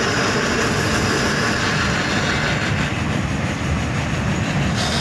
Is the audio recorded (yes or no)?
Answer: yes